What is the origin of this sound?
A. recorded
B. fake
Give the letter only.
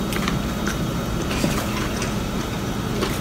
B